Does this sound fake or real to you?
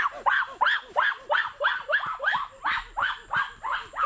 real